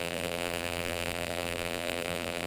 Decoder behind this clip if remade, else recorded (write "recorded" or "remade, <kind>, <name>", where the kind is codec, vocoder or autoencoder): remade, vocoder, BigVGAN v2